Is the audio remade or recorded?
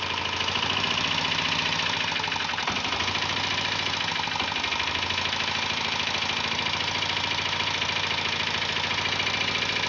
recorded